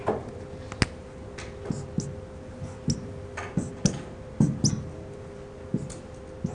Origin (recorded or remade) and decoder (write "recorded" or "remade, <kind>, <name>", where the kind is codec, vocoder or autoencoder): recorded